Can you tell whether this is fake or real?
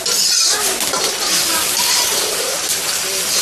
real